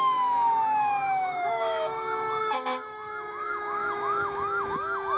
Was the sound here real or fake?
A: fake